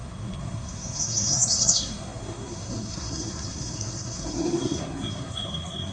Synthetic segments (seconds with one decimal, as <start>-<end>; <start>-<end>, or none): 0.0-5.9